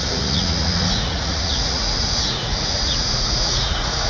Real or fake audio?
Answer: fake